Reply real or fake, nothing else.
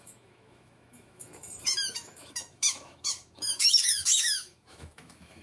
fake